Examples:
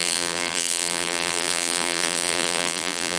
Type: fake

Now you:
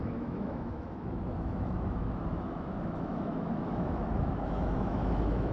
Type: fake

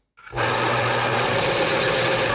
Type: real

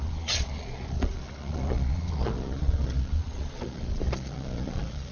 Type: fake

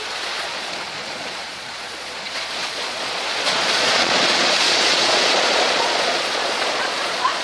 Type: fake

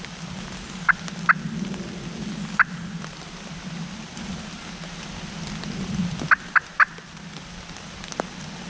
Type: real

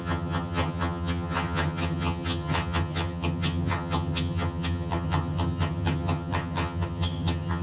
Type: fake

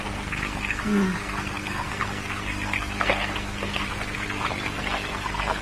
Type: fake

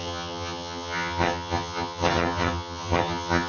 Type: fake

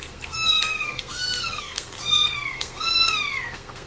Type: fake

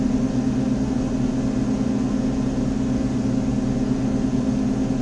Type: real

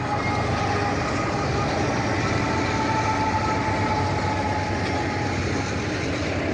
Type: real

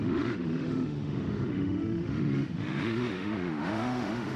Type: fake